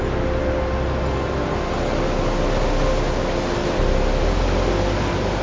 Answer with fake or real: real